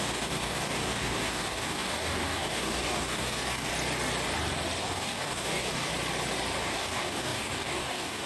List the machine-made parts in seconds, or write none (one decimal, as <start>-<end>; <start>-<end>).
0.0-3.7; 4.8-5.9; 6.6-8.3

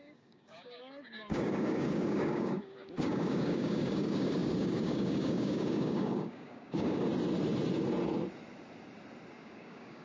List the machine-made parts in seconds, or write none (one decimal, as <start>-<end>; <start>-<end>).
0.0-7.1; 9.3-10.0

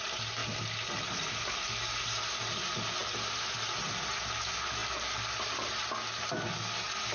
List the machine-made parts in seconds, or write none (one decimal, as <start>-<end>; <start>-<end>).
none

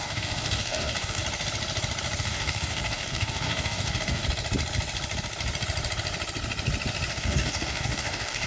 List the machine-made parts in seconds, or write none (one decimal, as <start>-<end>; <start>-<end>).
0.0-1.2; 2.2-4.2; 7.1-8.5

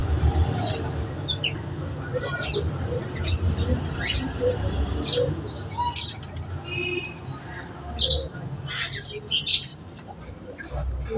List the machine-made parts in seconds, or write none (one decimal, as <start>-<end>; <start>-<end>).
none

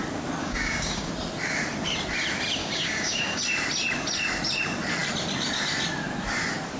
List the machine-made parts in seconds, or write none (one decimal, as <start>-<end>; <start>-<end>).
0.4-1.1; 2.6-3.4